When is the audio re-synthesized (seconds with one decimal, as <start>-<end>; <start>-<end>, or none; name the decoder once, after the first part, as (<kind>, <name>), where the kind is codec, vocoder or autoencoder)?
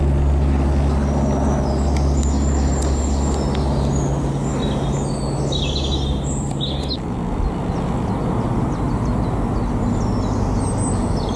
none